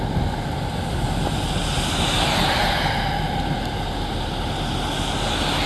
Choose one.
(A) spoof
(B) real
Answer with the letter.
B